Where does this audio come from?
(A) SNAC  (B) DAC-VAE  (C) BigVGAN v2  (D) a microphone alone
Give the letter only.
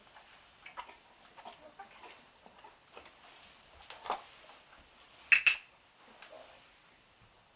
D